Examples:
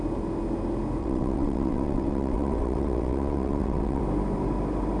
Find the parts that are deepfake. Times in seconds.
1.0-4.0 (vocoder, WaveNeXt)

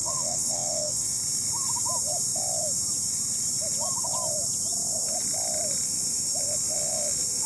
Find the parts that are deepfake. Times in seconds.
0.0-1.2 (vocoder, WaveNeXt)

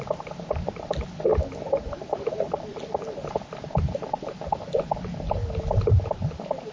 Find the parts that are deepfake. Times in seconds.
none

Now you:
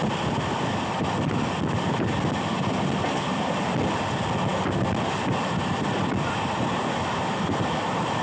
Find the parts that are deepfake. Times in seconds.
none